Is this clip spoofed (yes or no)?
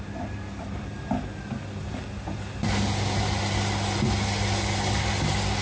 no